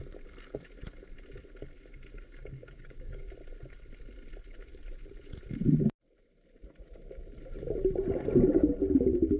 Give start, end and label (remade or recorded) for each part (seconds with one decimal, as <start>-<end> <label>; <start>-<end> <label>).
0.0-2.4 recorded; 2.4-3.3 remade; 3.3-9.4 recorded